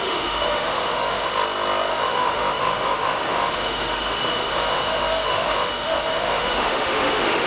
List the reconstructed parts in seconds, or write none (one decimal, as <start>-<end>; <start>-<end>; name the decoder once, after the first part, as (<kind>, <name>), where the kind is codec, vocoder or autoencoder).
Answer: 0.0-1.3 (autoencoder, DAC-VAE); 1.9-7.5